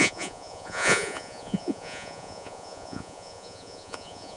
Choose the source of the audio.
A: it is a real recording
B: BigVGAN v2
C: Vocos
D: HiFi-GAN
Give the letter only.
C